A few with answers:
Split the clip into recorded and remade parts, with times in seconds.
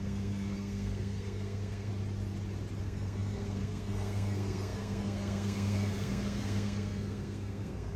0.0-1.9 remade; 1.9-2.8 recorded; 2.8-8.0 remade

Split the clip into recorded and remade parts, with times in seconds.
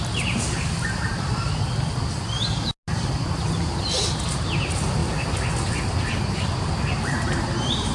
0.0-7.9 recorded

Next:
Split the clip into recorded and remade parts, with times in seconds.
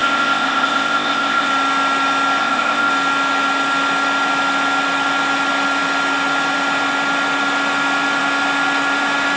0.0-1.5 remade; 1.5-2.4 recorded; 2.4-2.9 remade; 2.9-9.4 recorded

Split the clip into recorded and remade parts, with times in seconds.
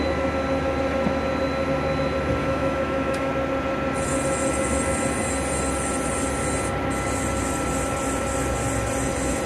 0.0-2.4 recorded; 2.4-3.3 remade; 3.3-9.5 recorded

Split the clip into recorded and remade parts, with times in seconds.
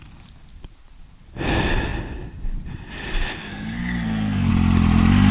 0.0-3.4 recorded; 3.4-4.5 remade; 4.5-5.3 recorded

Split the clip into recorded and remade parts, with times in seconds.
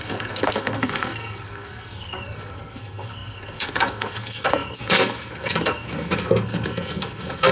0.0-7.5 remade